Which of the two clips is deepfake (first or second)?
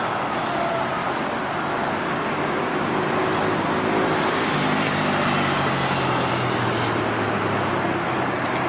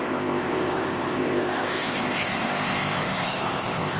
second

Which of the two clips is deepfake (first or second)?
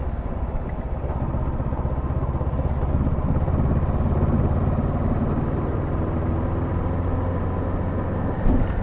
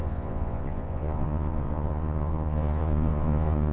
second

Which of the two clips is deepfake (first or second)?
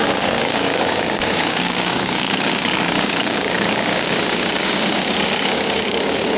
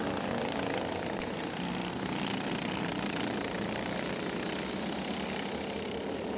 first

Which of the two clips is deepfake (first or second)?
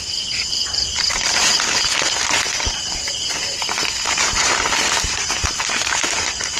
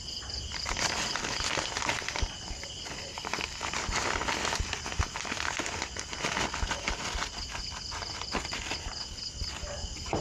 first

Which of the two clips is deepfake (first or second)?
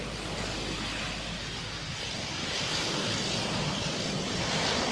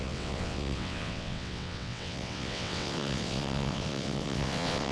second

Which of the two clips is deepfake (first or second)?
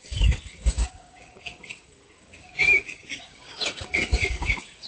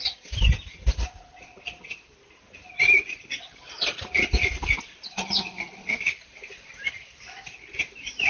first